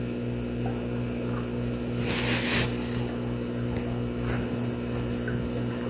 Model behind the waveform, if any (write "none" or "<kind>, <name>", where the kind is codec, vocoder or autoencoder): none